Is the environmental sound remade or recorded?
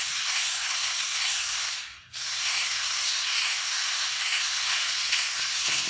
remade